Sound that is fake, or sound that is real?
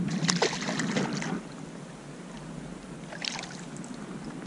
real